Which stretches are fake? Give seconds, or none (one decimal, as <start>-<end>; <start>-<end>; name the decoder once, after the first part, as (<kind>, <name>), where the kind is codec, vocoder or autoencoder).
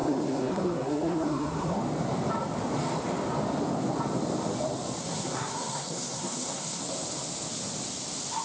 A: 0.0-1.8 (codec, SNAC); 5.0-6.8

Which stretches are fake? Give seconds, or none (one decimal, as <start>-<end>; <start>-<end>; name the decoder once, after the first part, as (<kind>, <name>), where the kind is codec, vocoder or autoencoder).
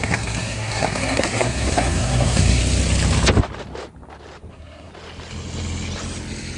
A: 0.0-2.6 (codec, SNAC); 4.5-4.9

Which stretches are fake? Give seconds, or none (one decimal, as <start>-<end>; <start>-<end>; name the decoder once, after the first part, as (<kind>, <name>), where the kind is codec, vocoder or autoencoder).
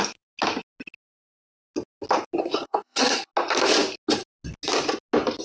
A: 2.4-3.3 (codec, SNAC)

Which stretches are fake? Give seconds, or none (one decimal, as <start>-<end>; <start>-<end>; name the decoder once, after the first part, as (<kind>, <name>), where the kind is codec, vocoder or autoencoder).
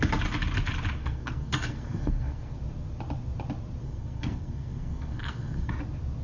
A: 1.0-2.6 (codec, SNAC); 3.8-5.7